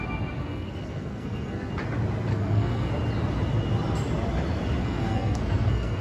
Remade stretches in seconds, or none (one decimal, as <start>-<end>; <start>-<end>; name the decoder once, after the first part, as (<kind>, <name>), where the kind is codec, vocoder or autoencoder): 0.4-1.7 (codec, SNAC); 2.3-2.9; 4.8-6.0